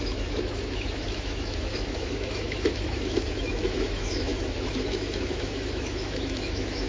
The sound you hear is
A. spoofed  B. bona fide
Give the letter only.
A